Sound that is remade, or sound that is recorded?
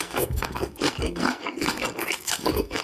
remade